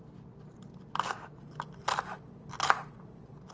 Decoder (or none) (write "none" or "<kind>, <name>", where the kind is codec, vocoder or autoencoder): none